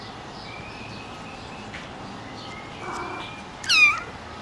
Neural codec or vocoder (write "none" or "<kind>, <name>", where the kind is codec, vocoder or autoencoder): none